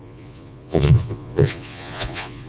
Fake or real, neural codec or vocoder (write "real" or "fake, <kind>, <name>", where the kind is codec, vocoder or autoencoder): fake, vocoder, Vocos